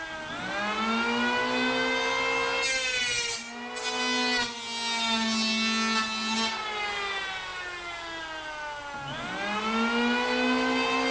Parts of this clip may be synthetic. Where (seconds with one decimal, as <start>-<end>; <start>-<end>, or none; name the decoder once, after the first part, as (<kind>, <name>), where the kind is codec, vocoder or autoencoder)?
none